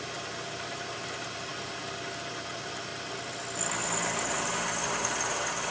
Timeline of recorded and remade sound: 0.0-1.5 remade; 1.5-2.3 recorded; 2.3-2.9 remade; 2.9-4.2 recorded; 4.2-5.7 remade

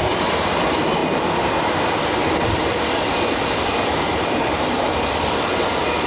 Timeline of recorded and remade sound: 0.0-6.1 remade

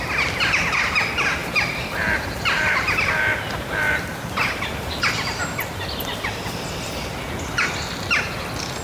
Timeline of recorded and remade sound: 0.0-1.4 recorded; 1.4-6.4 remade; 6.4-8.8 recorded

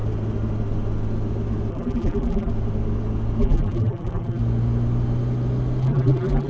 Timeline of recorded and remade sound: 0.0-1.7 recorded; 1.7-2.5 remade; 2.5-3.4 recorded; 3.4-4.4 remade; 4.4-5.8 recorded; 5.8-6.5 remade

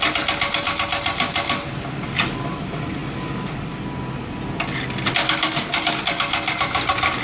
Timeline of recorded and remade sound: 0.0-7.2 recorded

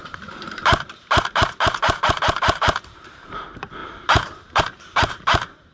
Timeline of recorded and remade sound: 0.0-5.7 remade

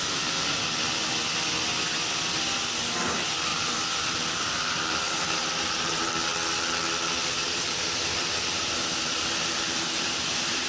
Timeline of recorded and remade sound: 0.0-3.5 recorded; 3.5-6.1 remade; 6.1-7.2 recorded; 7.2-10.7 remade